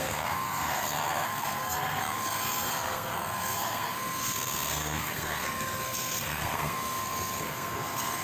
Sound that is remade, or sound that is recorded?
remade